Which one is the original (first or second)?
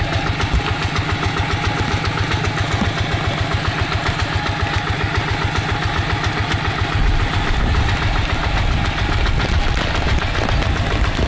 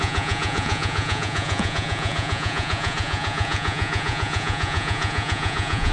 first